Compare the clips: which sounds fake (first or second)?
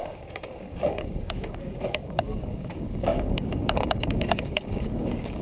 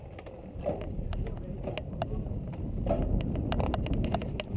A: first